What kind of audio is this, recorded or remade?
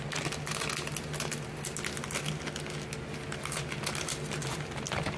recorded